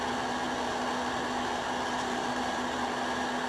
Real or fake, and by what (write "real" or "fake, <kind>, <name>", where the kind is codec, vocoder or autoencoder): real